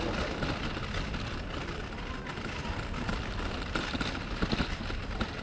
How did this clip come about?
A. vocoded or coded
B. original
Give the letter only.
B